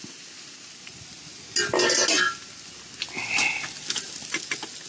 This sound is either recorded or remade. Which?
recorded